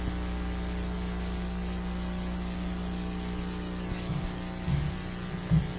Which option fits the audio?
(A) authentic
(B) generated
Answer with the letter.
A